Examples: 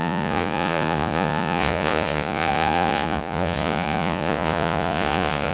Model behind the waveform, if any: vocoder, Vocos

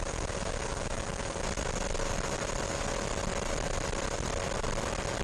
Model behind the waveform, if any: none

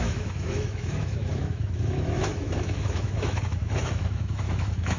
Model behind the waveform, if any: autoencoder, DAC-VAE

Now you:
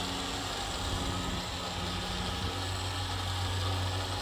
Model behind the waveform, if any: none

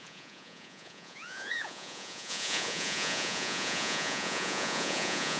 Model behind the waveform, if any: vocoder, Vocos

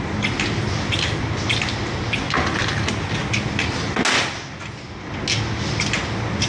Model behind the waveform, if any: none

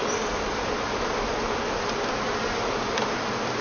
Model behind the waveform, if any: none